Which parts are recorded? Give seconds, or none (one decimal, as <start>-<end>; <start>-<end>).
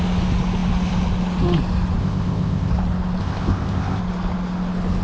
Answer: 0.0-2.0; 2.7-3.2; 4.0-5.0